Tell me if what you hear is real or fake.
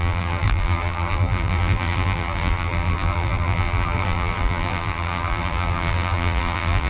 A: fake